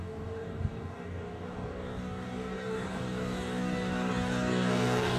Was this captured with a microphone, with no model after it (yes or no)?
no